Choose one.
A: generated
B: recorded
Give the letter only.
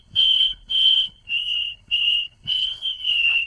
A